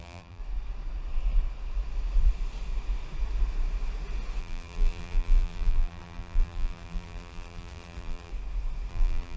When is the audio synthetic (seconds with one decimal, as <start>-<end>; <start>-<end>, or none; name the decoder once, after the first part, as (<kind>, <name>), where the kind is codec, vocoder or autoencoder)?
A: 0.0-0.4 (vocoder, BigVGAN v2); 4.4-8.3; 8.9-9.4